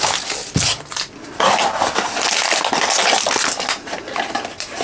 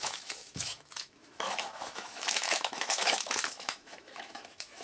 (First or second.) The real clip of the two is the first